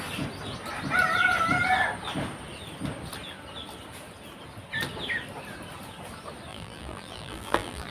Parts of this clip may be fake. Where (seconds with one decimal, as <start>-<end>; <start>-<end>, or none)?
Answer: 6.5-7.9